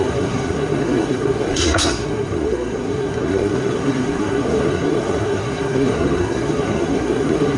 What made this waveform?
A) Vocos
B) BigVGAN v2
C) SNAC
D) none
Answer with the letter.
C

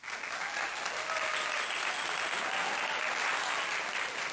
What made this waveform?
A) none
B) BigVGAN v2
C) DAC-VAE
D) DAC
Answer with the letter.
A